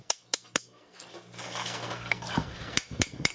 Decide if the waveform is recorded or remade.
remade